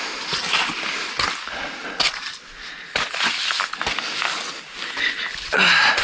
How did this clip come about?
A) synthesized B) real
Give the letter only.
B